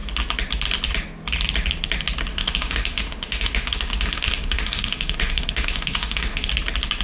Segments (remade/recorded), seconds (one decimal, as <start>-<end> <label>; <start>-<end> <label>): 0.0-2.3 recorded; 2.3-6.5 remade; 6.5-7.0 recorded